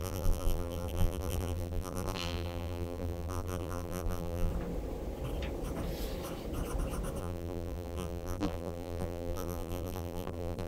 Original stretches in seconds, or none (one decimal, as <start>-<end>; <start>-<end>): 4.5-7.2